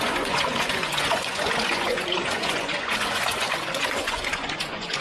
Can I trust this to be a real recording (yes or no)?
no